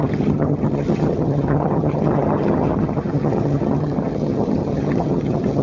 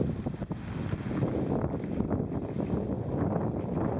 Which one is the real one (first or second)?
second